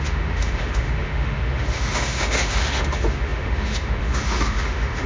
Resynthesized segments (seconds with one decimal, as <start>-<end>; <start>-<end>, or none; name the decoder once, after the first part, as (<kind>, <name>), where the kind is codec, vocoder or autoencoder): 0.0-5.1 (autoencoder, DAC-VAE)